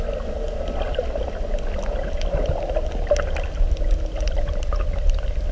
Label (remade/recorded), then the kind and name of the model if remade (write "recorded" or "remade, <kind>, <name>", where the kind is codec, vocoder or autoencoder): recorded